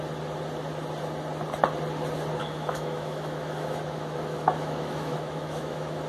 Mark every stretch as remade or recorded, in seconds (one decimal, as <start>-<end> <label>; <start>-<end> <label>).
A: 0.0-2.4 recorded; 2.4-6.1 remade